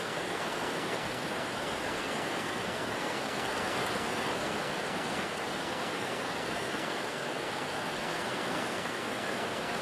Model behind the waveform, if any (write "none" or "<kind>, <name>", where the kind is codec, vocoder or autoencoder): codec, SNAC